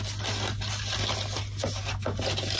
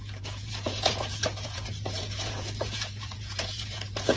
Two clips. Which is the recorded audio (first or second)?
first